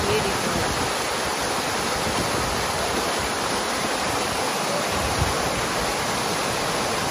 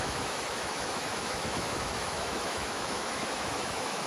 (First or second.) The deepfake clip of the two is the second